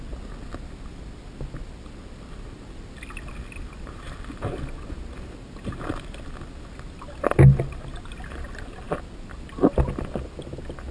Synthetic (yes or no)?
no